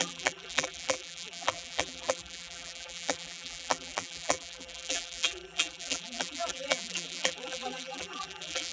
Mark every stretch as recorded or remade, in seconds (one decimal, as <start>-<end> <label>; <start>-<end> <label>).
0.0-8.7 remade